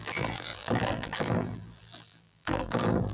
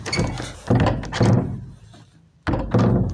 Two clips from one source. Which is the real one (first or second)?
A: second